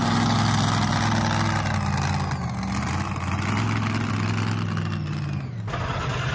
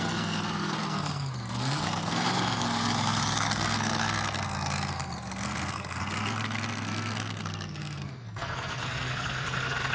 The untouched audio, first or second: first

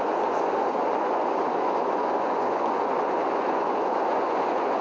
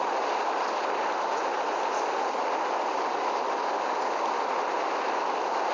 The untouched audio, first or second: second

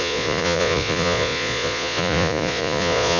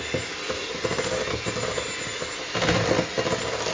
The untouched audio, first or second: second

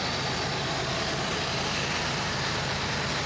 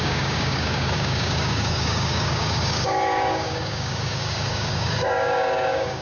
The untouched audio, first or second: first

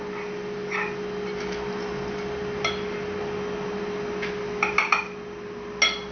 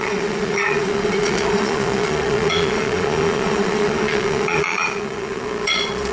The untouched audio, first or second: first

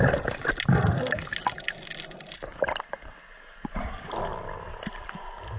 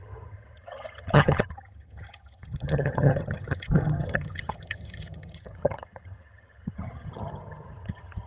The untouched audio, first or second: first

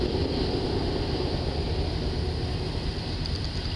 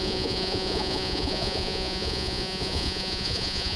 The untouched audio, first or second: first